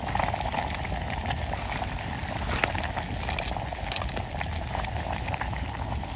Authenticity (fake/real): real